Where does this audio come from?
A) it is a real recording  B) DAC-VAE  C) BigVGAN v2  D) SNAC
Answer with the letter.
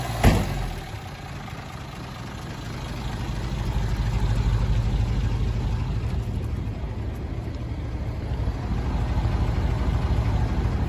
A